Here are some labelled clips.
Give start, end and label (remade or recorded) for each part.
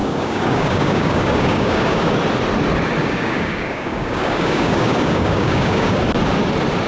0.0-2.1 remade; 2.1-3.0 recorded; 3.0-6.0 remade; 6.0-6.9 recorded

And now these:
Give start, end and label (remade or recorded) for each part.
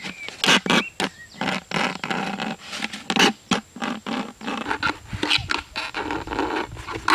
0.0-7.1 recorded